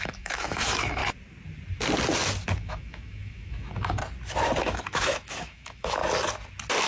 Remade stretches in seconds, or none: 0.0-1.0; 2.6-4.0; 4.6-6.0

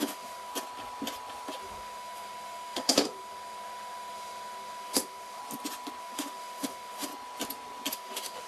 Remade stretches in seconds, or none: 0.0-0.5; 1.6-5.4; 6.0-7.1; 7.9-8.5

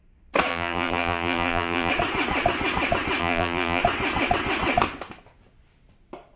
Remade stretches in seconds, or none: 0.5-1.9; 3.2-3.8

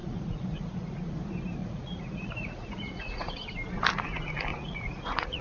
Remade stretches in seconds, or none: 0.0-1.1; 1.6-3.3; 4.5-5.4

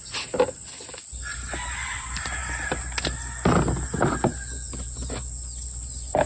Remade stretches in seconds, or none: 0.0-2.4

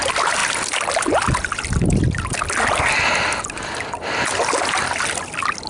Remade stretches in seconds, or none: none